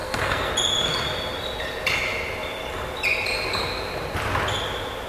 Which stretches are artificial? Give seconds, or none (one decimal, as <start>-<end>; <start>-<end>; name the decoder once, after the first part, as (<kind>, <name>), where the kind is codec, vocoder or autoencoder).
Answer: 0.0-0.5 (codec, SNAC)